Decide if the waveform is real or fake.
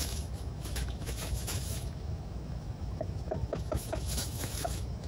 fake